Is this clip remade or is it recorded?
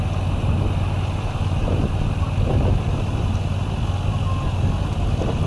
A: recorded